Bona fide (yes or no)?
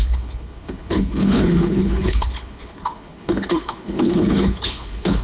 no